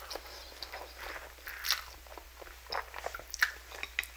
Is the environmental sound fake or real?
real